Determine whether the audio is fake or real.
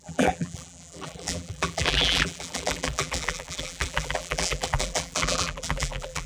fake